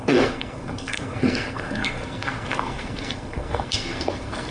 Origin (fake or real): fake